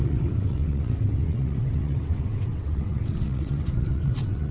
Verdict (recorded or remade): remade